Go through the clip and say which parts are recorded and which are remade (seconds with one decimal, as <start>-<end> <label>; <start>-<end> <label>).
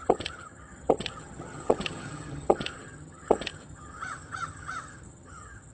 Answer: 0.0-5.7 remade